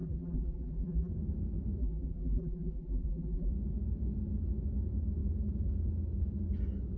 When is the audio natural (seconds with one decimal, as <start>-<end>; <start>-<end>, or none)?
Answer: 1.1-1.8; 3.5-7.0